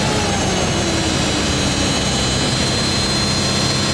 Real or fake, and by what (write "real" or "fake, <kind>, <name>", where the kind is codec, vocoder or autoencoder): real